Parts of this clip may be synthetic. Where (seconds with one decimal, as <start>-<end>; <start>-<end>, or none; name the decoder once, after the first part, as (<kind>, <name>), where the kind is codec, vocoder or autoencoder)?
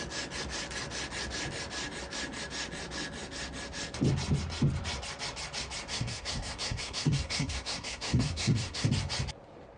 5.9-8.9 (codec, SNAC)